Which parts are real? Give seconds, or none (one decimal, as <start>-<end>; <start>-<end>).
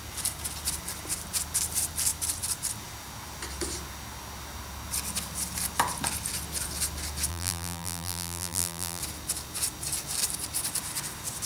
0.0-7.3; 9.0-11.5